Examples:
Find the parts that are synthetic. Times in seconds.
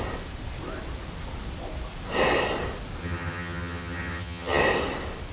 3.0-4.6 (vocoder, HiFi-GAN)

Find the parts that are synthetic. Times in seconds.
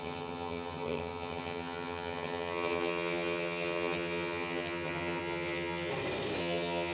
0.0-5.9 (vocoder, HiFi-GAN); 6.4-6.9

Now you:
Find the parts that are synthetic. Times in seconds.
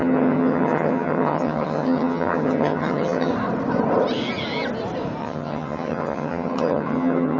0.0-3.3 (vocoder, HiFi-GAN); 5.2-7.4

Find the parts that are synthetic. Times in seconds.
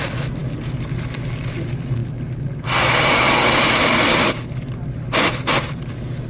none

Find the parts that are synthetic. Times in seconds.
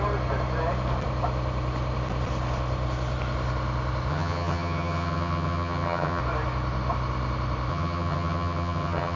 4.1-6.2 (vocoder, HiFi-GAN); 7.7-9.2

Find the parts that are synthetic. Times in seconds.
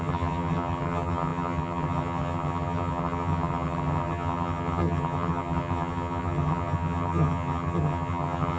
0.0-8.6 (vocoder, HiFi-GAN)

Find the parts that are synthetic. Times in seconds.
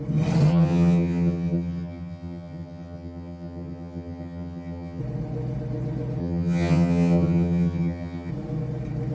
0.5-5.0 (vocoder, HiFi-GAN); 6.2-8.3